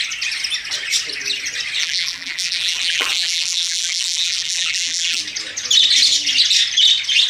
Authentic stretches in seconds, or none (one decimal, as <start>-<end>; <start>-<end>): 0.0-1.8; 5.2-7.3